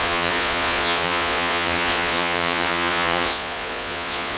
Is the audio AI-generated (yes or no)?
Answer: yes